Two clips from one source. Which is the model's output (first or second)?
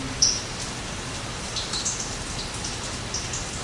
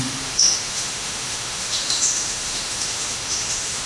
second